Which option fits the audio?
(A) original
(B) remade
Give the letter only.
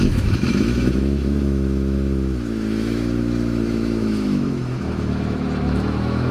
B